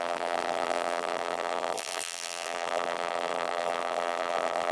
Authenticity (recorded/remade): remade